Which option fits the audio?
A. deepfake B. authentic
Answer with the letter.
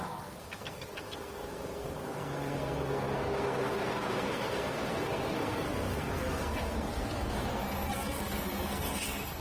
A